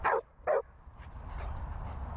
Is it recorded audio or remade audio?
recorded